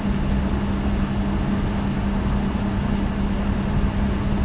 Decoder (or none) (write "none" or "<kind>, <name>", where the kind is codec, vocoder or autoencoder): none